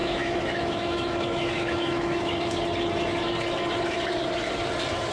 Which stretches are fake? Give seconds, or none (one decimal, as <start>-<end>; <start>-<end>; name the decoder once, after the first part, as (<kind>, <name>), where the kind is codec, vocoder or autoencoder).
0.0-2.5 (autoencoder, DAC-VAE)

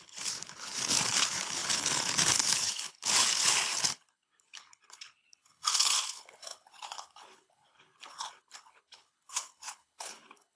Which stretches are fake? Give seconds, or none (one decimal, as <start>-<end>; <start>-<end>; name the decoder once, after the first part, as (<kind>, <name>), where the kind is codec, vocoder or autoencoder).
0.0-10.6 (codec, HILCodec)